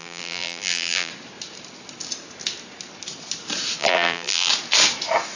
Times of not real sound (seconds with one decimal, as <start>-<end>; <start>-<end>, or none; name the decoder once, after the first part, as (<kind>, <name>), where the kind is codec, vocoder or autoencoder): 0.0-1.1 (vocoder, BigVGAN v2); 3.8-4.5